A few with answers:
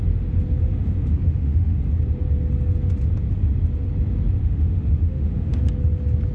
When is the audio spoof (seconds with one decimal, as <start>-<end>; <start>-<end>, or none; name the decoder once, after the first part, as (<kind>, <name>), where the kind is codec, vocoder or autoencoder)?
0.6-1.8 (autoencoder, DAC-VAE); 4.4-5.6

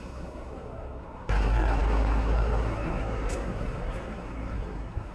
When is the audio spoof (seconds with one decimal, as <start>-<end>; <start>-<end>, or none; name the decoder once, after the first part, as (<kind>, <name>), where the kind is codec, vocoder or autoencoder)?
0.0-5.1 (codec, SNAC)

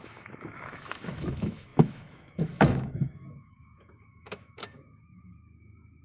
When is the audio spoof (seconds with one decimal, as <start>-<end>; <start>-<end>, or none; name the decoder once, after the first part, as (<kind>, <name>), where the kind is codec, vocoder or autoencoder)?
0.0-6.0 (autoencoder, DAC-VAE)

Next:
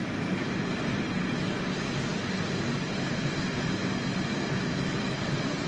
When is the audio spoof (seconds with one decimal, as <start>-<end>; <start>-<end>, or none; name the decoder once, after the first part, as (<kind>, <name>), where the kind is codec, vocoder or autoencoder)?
none

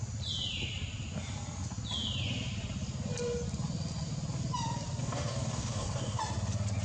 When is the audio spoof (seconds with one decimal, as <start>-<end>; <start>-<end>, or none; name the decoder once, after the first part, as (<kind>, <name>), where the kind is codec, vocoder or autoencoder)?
5.0-6.2 (codec, DAC)

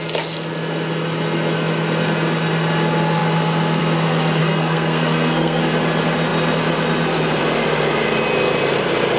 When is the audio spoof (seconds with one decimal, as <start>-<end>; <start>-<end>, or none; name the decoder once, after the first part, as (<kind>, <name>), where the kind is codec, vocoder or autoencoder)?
4.4-5.6 (codec, SNAC)

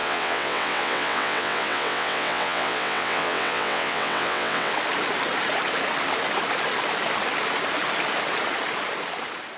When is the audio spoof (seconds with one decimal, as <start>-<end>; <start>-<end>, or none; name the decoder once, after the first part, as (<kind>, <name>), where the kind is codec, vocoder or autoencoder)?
0.0-4.7 (vocoder, WaveNeXt)

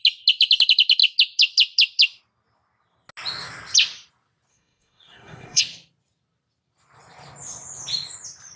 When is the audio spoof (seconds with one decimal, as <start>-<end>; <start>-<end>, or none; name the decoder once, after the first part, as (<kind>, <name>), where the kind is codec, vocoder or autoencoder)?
4.5-5.6 (codec, SNAC)